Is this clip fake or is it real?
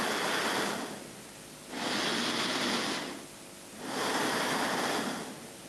real